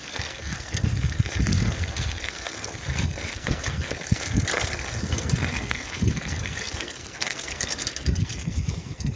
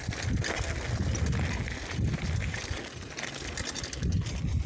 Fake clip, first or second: first